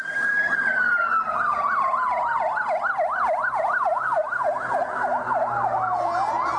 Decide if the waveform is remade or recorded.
recorded